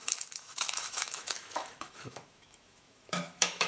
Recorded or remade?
remade